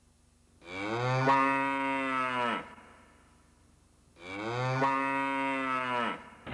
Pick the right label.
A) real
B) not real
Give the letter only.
A